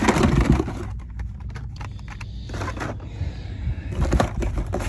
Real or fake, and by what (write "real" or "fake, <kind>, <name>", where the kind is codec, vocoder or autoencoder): real